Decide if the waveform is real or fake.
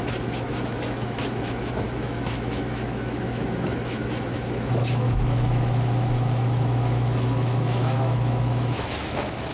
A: fake